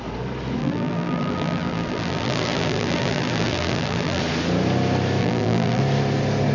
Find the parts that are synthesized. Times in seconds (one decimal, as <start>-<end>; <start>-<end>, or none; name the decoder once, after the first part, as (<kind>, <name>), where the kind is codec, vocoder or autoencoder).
0.6-4.2 (vocoder, BigVGAN v2); 5.2-5.8